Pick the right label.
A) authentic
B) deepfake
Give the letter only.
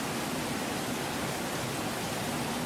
A